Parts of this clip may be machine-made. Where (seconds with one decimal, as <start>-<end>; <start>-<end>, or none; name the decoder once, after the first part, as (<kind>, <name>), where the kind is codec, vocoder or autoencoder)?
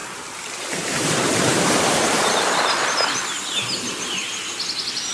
0.0-3.1 (vocoder, BigVGAN v2)